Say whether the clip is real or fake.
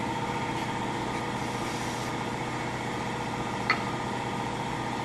fake